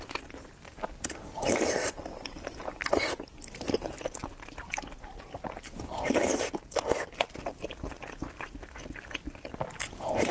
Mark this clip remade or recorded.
recorded